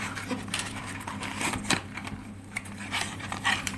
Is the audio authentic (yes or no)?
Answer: no